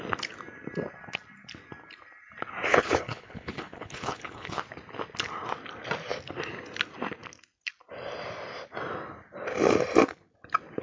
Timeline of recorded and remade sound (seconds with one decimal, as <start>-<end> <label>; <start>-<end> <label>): 0.0-2.7 recorded; 2.7-4.6 remade; 4.6-10.8 recorded